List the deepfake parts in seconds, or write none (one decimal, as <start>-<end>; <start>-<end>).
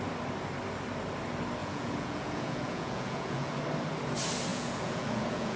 1.6-3.6; 4.5-5.6